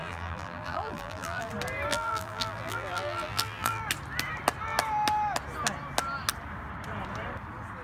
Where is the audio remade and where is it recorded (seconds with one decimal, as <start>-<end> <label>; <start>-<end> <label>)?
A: 0.0-1.5 remade; 1.5-1.9 recorded; 1.9-3.8 remade; 3.8-7.8 recorded